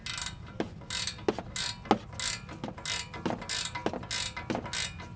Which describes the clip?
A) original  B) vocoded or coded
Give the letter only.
A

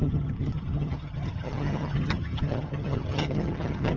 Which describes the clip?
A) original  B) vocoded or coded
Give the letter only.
B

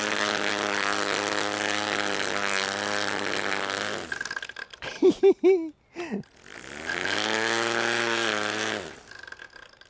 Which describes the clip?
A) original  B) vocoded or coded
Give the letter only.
A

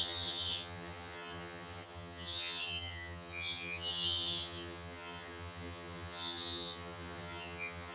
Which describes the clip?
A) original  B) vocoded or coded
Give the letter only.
B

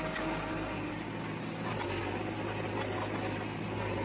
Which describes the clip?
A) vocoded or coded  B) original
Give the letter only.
B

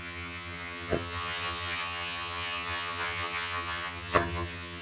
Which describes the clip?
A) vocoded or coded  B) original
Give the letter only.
A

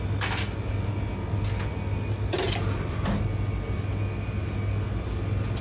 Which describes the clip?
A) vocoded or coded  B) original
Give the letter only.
B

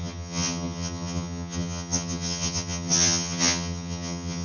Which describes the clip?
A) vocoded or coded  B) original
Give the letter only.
A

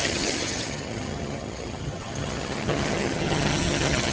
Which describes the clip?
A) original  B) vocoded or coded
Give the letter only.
B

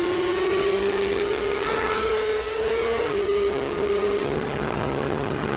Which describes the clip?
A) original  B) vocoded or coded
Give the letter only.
B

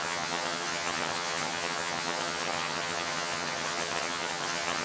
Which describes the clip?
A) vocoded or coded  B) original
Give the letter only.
A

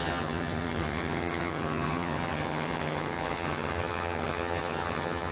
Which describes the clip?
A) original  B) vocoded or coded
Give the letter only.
B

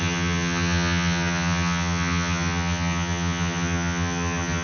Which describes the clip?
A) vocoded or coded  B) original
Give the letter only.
A